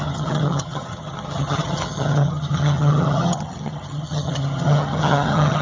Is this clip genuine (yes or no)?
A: no